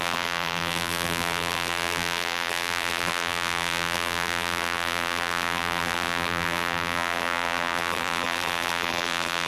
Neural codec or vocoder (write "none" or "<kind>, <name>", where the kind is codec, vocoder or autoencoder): vocoder, BigVGAN v2